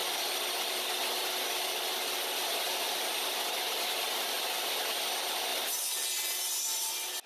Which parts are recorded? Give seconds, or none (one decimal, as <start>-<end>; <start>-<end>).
0.0-7.3